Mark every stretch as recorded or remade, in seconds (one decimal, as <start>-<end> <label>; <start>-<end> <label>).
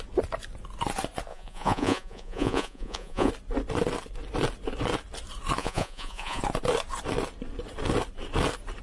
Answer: 0.0-1.3 recorded; 1.3-3.3 remade; 3.3-5.6 recorded; 5.6-6.4 remade; 6.4-8.8 recorded